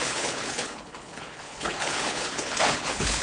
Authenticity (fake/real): fake